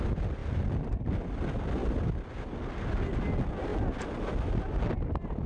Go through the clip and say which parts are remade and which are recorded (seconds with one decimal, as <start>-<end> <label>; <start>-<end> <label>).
0.0-0.4 recorded; 0.4-1.1 remade; 1.1-3.7 recorded; 3.7-4.3 remade; 4.3-5.5 recorded